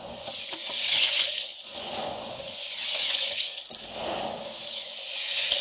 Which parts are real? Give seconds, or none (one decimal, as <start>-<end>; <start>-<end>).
3.5-4.7